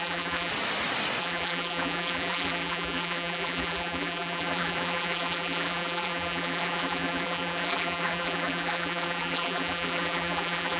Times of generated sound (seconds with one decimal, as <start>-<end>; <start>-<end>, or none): 0.0-0.5; 1.2-10.8